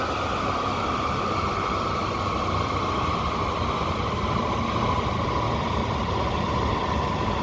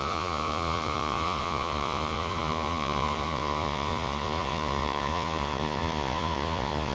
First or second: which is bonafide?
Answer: first